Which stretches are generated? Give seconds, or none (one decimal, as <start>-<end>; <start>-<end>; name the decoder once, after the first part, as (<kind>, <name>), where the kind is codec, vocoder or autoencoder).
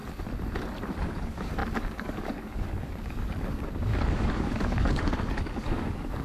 1.0-6.2 (codec, DAC)